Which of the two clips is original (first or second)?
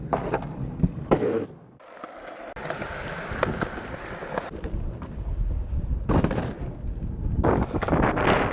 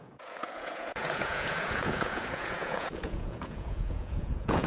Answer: first